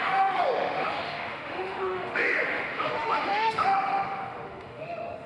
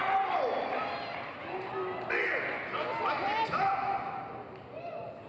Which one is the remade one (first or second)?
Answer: first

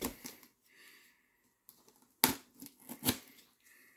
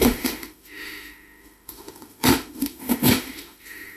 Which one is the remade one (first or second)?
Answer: second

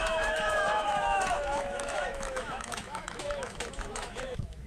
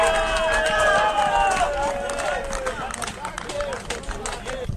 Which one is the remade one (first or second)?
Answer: first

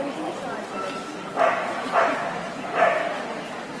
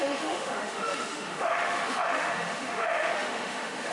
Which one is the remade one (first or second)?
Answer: second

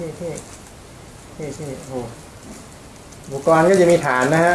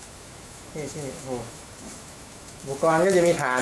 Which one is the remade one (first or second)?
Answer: second